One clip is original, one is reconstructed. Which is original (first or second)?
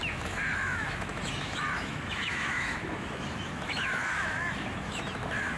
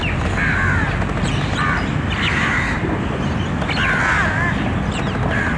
second